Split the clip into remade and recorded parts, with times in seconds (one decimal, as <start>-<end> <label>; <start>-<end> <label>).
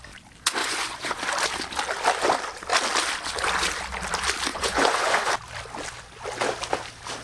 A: 0.0-0.6 recorded; 0.6-1.2 remade; 1.2-4.5 recorded; 4.5-5.3 remade; 5.3-7.2 recorded